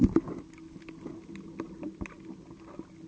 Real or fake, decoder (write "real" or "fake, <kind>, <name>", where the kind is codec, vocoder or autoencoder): real